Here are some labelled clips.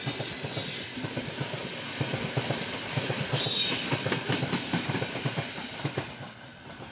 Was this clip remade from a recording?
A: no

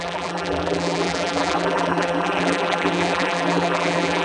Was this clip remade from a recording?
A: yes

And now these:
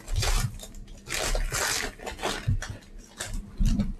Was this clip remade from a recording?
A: no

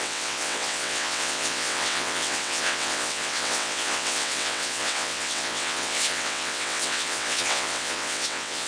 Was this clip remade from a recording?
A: yes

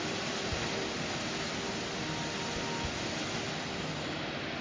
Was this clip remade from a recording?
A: no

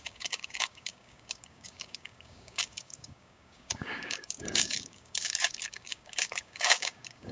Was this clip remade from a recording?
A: yes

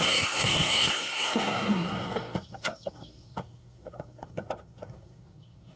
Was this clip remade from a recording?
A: yes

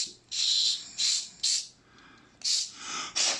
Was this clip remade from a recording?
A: no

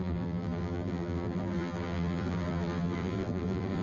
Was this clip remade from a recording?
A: yes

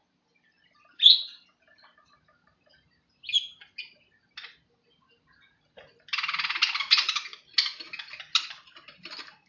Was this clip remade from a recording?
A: no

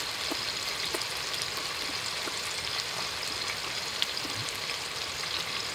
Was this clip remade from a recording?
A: no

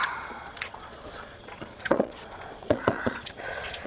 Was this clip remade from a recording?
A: yes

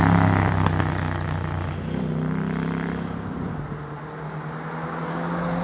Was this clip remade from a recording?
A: no